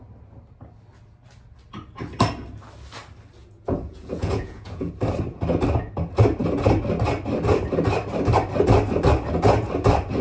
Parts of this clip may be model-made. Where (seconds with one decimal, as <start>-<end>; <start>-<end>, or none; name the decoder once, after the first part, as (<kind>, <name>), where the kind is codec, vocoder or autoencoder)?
3.4-4.9 (vocoder, Vocos)